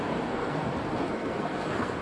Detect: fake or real fake